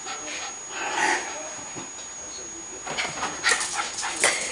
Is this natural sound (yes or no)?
yes